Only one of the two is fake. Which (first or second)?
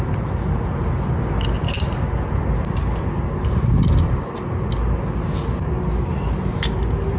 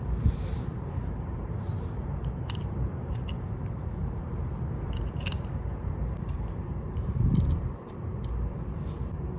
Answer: second